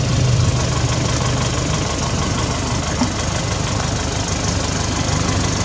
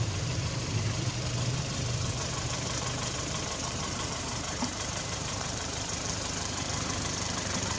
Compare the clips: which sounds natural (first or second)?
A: first